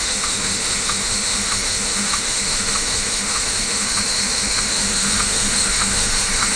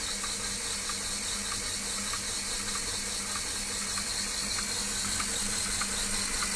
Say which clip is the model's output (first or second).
first